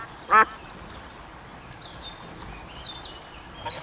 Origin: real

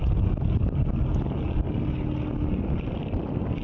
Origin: real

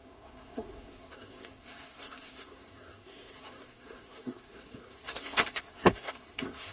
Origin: fake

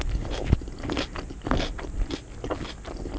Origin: real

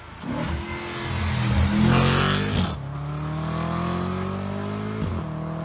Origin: real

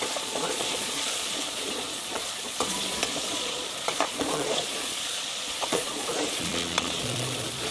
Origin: fake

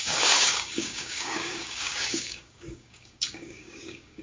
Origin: fake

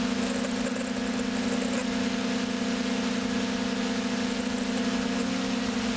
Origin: real